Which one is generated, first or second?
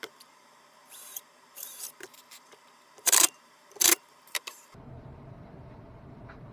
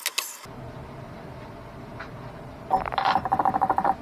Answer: first